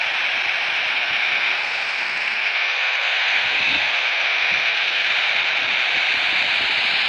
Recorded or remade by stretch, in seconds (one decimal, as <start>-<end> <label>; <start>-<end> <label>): 0.0-0.9 recorded; 0.9-5.1 remade; 5.1-7.1 recorded